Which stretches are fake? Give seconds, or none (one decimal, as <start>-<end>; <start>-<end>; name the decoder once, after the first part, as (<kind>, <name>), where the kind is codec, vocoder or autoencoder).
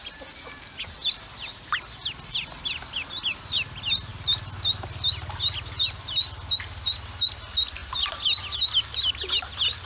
0.0-0.8 (vocoder, BigVGAN v2); 7.8-8.6